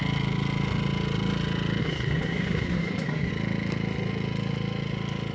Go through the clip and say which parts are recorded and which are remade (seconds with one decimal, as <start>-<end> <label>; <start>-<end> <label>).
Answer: 0.0-1.8 recorded; 1.8-3.3 remade; 3.3-5.3 recorded